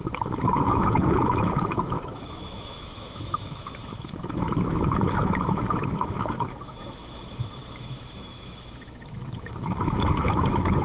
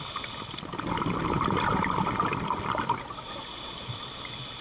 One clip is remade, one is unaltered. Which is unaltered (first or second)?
second